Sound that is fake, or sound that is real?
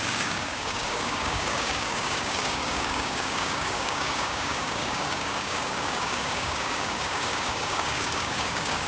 fake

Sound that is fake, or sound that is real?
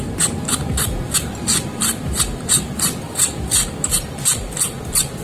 fake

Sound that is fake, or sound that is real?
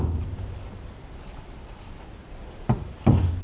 real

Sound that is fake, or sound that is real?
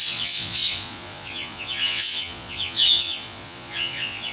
fake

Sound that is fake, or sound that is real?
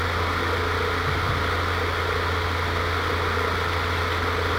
real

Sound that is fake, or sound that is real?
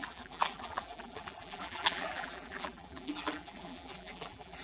fake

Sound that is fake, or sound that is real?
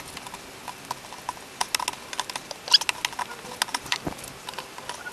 real